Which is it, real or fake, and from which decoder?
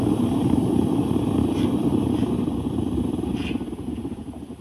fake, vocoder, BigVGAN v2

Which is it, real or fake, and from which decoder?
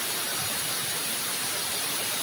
fake, vocoder, BigVGAN v2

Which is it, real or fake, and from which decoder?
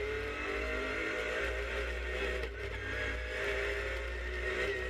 real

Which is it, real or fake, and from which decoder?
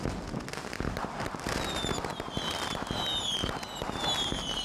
real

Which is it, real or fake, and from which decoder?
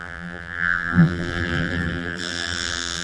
fake, vocoder, BigVGAN v2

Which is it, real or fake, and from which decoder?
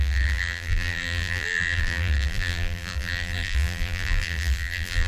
fake, vocoder, BigVGAN v2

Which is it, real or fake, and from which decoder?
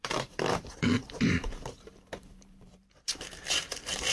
fake, vocoder, BigVGAN v2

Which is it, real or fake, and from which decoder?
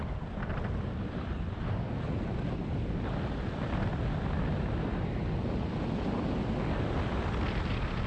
real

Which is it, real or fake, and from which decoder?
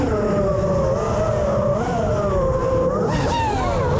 real